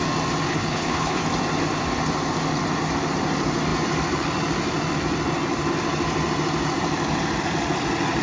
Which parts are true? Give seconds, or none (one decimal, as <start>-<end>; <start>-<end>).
0.0-0.5; 1.2-8.2